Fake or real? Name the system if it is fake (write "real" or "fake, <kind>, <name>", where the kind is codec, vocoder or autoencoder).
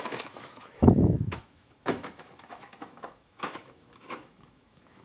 fake, autoencoder, DAC-VAE